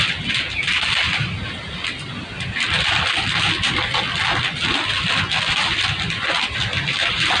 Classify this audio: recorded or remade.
recorded